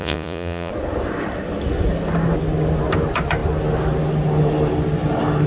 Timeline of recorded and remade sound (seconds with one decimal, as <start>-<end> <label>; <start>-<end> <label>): 0.0-0.7 remade; 0.7-5.5 recorded